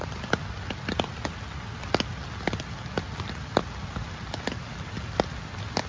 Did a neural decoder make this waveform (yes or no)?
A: no